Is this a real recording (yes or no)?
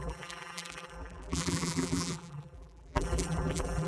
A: no